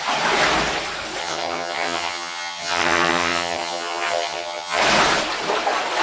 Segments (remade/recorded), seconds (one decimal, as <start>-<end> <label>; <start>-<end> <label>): 0.0-1.2 recorded; 1.2-4.8 remade; 4.8-6.0 recorded